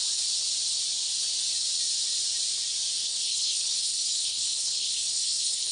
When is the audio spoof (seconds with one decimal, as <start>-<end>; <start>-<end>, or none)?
3.0-5.7